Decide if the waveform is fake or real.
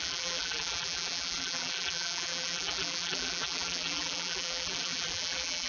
fake